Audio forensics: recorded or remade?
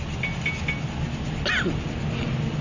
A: recorded